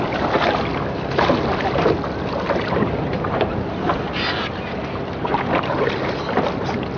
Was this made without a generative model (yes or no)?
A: yes